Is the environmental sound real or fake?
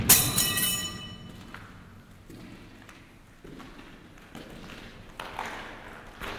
real